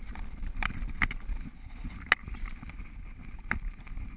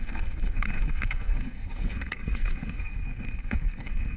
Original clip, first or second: first